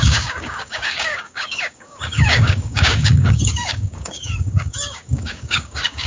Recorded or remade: remade